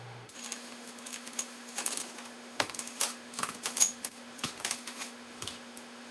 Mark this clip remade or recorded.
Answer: remade